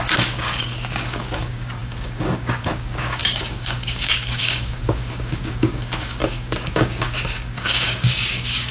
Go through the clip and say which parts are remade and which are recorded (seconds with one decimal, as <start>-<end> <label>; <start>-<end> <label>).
0.0-8.7 remade